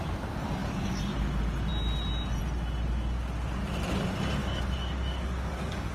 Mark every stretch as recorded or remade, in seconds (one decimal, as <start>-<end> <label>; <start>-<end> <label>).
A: 0.0-0.6 recorded; 0.6-1.1 remade; 1.1-4.4 recorded; 4.4-5.9 remade

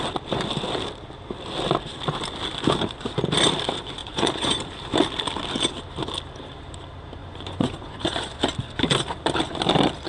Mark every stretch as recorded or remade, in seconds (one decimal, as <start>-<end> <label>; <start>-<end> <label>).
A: 0.0-4.0 recorded; 4.0-4.6 remade; 4.6-7.2 recorded; 7.2-8.4 remade; 8.4-10.1 recorded

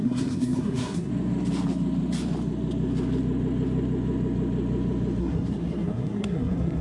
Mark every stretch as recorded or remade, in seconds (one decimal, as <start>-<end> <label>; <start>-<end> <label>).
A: 0.0-1.1 remade; 1.1-5.2 recorded; 5.2-6.8 remade

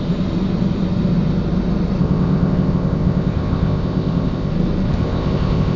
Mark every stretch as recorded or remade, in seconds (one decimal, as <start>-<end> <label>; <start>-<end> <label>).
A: 0.0-2.0 recorded; 2.0-4.5 remade; 4.5-4.9 recorded; 4.9-5.8 remade